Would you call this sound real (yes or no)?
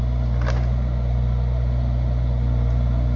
yes